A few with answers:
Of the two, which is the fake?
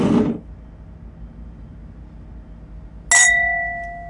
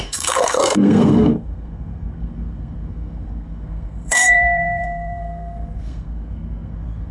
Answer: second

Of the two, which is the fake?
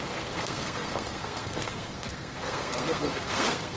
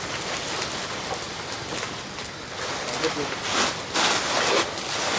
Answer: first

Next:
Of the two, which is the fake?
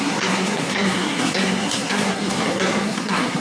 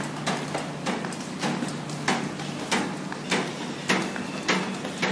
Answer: first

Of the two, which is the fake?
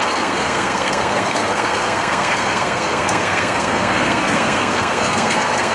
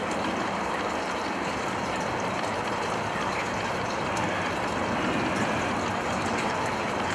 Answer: first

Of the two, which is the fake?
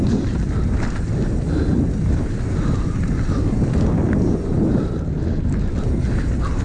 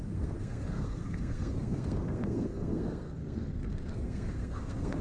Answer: second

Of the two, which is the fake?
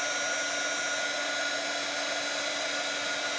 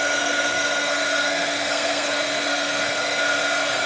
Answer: second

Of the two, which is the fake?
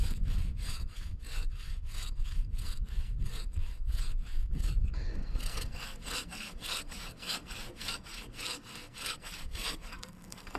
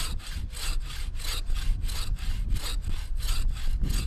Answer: first